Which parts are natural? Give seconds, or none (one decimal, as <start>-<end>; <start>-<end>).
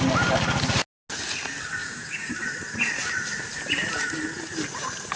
0.0-1.8; 2.3-5.2